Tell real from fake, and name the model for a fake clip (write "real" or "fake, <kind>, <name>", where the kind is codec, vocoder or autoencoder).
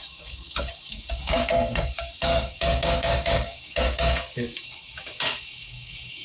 fake, codec, DAC